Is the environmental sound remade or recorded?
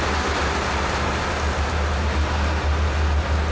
recorded